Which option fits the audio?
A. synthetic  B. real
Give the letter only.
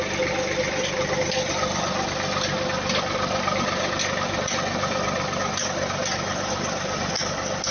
B